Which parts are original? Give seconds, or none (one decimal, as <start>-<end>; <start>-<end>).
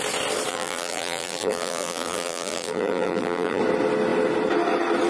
0.0-0.5; 3.6-5.1